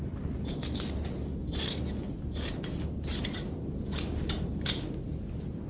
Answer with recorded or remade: recorded